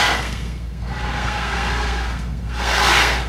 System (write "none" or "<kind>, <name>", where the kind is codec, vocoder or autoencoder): codec, SNAC